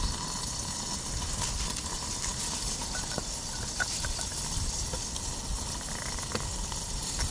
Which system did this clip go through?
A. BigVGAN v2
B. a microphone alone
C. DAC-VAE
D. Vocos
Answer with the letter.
B